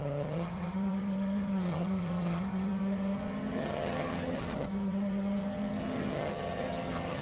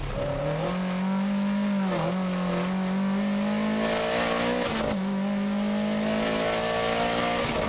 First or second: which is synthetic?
first